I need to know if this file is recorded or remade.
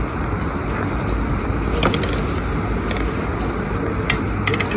recorded